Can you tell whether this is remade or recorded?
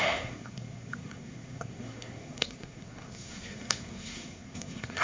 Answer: remade